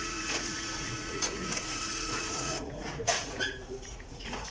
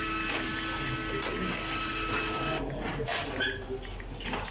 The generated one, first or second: first